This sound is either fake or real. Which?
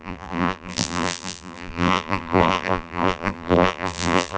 fake